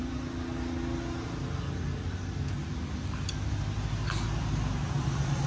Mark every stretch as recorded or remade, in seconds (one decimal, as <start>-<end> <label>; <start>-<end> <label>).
0.0-5.5 recorded